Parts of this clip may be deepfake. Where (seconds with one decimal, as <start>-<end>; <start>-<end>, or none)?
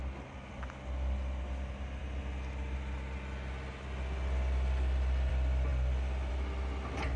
none